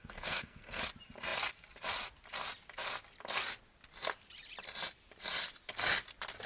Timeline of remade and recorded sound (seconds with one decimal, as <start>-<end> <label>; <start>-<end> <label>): 0.0-0.8 remade; 0.8-6.5 recorded